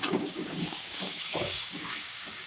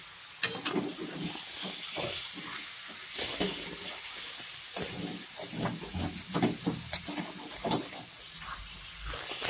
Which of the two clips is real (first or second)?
second